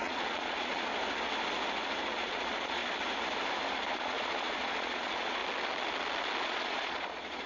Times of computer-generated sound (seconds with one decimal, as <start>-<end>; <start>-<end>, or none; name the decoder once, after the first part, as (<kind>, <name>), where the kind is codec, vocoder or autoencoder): 0.0-0.9 (vocoder, Vocos); 2.1-2.8; 3.9-5.4; 6.4-7.5